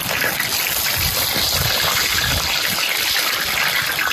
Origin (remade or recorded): recorded